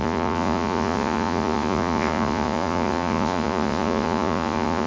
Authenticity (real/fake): fake